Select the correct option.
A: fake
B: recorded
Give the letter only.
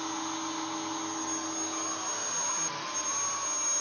B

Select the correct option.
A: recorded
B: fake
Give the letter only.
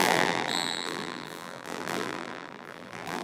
B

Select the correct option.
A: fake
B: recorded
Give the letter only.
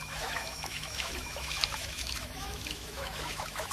A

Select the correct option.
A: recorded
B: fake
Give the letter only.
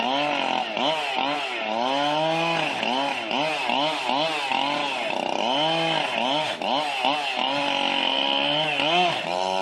A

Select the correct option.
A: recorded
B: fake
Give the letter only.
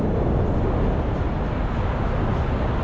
A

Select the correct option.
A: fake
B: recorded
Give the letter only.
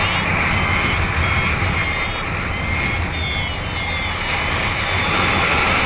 B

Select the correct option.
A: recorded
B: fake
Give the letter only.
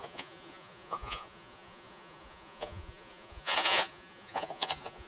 B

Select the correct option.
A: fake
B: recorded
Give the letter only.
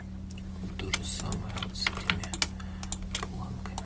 B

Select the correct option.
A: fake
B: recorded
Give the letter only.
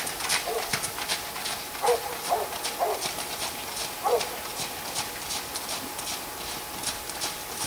B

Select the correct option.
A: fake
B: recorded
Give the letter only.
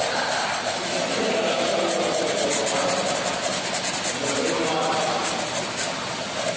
B